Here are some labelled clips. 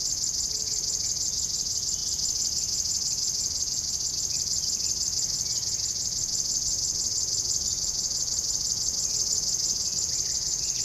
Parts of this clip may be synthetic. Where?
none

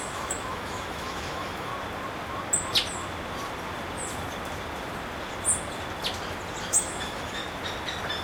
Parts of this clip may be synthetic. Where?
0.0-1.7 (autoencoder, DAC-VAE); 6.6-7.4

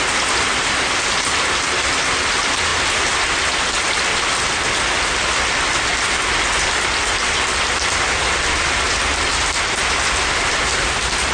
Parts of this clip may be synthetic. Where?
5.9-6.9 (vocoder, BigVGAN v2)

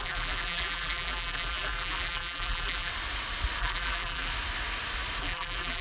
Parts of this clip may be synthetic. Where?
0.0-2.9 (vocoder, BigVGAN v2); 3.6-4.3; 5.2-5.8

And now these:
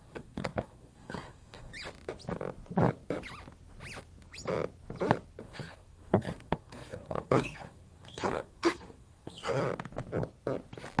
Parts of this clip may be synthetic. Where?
0.0-1.7 (codec, SNAC); 5.4-9.6

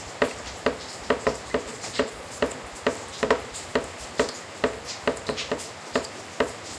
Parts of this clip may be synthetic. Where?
1.7-2.4 (vocoder, Vocos)